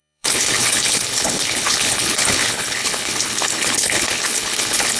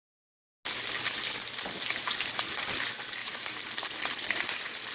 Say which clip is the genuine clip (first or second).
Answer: second